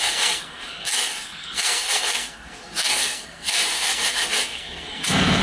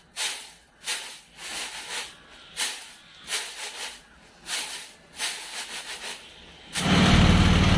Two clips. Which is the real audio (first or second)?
second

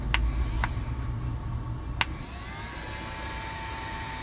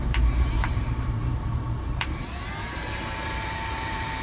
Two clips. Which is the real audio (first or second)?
first